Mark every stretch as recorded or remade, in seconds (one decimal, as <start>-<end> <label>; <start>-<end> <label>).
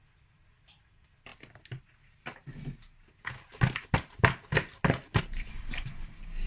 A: 0.0-6.5 recorded